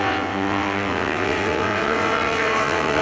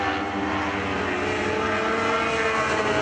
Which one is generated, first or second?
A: first